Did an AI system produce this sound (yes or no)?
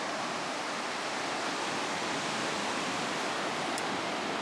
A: no